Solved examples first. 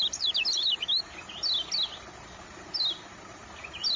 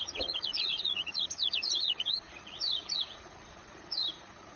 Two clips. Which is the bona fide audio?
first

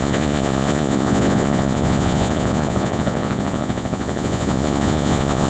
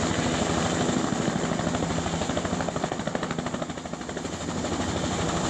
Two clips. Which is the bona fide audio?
second